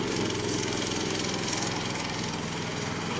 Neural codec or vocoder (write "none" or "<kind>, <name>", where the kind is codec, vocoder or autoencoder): none